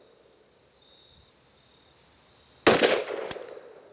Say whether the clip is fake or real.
real